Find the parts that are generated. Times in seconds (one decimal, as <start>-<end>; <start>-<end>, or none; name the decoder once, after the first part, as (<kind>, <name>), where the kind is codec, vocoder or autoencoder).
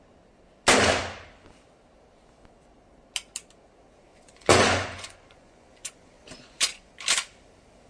4.1-6.9 (vocoder, Vocos)